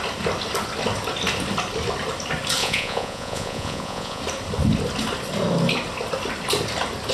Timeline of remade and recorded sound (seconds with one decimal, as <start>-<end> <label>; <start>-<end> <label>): 0.0-2.6 recorded; 2.6-4.2 remade; 4.2-7.1 recorded